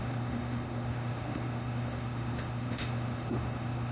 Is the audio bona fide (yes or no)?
no